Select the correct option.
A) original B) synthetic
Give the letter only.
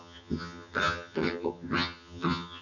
B